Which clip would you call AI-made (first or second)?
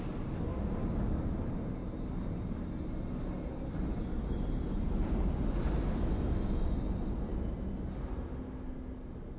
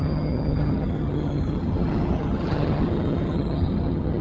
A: second